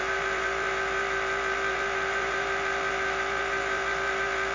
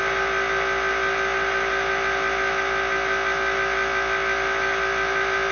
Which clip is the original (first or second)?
second